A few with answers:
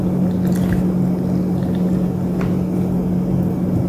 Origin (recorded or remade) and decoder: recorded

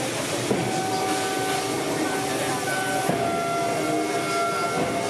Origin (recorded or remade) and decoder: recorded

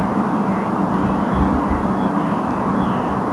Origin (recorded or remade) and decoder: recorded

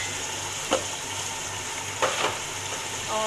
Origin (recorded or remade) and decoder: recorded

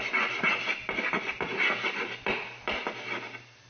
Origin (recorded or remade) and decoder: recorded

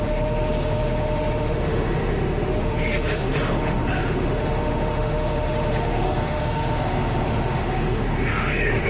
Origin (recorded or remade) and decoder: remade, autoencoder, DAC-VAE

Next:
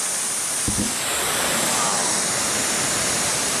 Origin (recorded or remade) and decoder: recorded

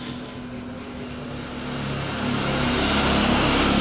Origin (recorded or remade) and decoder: recorded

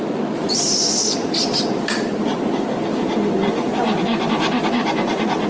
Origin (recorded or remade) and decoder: recorded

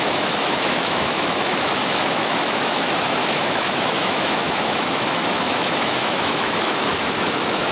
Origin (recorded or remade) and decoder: remade, autoencoder, DAC-VAE